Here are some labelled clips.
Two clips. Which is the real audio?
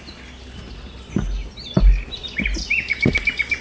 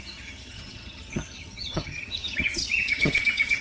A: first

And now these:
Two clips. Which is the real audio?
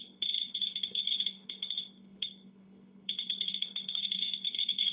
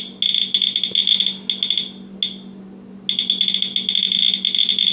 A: second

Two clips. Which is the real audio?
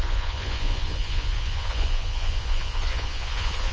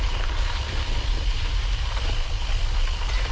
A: second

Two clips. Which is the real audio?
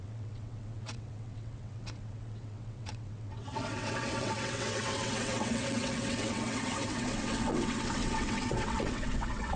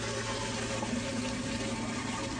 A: second